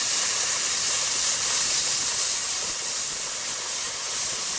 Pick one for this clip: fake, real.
real